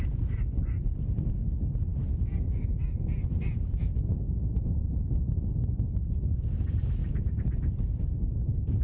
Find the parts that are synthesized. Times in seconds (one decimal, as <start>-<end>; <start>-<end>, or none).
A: none